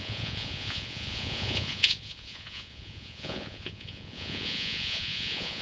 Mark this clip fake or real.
fake